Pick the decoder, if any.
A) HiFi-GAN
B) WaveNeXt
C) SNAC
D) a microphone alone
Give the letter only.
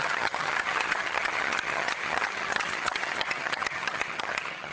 A